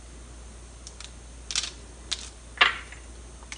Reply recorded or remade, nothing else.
recorded